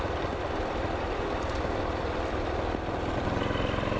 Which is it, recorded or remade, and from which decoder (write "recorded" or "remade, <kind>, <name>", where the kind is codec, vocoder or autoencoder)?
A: remade, vocoder, BigVGAN v2